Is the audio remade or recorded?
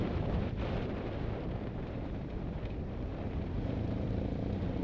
remade